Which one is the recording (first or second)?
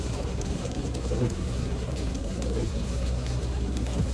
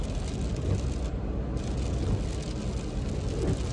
second